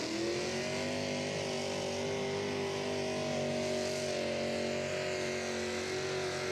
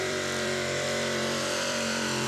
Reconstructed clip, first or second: second